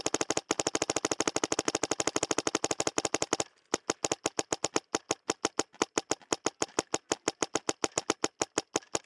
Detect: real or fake real